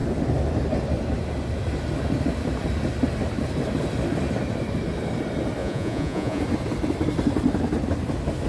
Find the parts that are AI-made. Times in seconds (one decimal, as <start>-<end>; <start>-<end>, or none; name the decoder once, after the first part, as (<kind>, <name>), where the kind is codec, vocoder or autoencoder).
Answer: 5.6-6.4 (vocoder, Vocos)